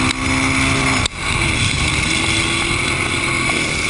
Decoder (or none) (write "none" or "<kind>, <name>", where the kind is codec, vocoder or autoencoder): none